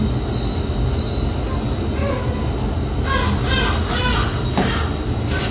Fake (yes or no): no